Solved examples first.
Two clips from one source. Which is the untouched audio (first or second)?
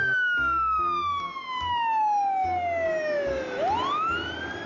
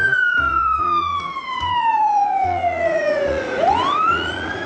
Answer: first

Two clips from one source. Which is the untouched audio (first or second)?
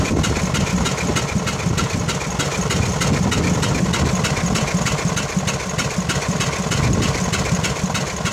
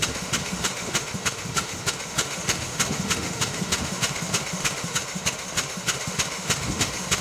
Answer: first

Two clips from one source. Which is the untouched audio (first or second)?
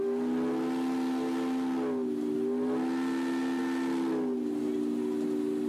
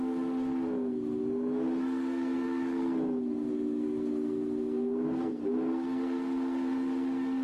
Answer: first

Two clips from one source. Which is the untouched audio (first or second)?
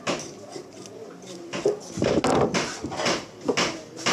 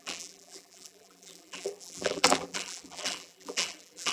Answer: first